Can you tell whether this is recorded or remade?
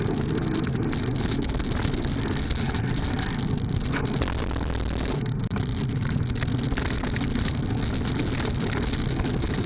recorded